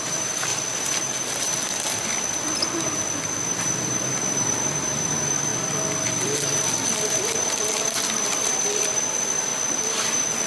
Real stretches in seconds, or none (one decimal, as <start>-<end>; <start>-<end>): 0.5-3.4; 5.5-7.1; 9.5-10.5